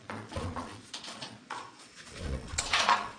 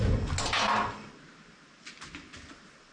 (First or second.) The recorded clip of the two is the second